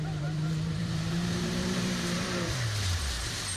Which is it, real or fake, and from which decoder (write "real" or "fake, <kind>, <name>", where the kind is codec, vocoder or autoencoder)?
fake, vocoder, BigVGAN v2